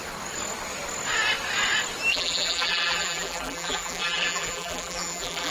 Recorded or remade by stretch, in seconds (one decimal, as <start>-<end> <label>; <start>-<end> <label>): 0.0-2.1 recorded; 2.1-5.5 remade